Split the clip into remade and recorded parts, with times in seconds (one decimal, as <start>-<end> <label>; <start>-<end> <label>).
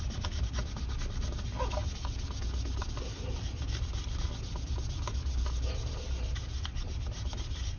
0.0-7.8 recorded